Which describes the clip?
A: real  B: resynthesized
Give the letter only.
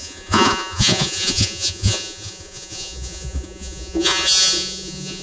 B